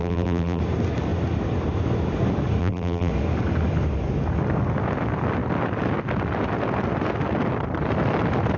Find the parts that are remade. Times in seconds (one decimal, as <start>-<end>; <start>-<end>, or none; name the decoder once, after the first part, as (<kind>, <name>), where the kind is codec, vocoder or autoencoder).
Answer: 0.0-0.6 (vocoder, BigVGAN v2); 2.6-3.1